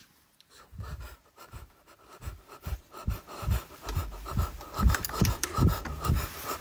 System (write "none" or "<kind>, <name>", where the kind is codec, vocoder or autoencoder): vocoder, BigVGAN v2